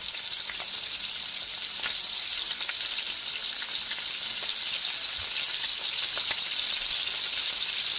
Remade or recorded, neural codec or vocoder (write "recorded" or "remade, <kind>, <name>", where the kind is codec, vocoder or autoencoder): recorded